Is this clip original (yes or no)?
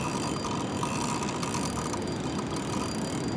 yes